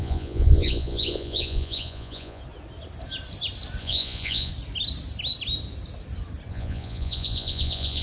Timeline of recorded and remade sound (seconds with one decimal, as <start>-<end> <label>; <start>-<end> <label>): 0.0-2.4 remade; 2.4-3.8 recorded; 3.8-4.5 remade; 4.5-6.5 recorded; 6.5-8.0 remade